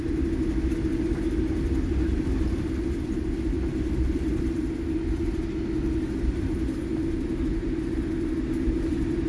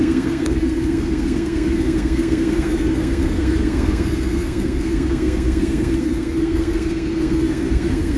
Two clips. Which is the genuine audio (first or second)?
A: first